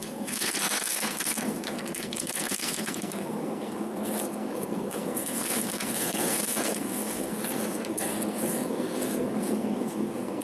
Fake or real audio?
fake